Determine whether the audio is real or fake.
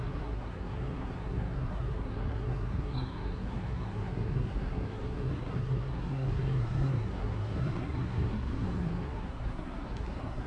fake